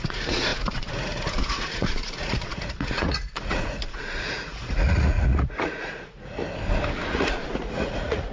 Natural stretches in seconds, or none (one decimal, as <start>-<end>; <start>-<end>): 6.4-7.1